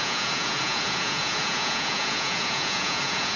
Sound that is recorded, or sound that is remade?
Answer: remade